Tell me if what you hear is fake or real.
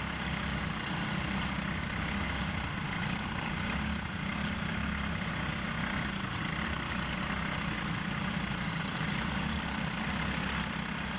real